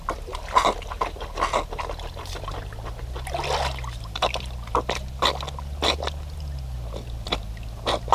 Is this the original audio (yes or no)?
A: yes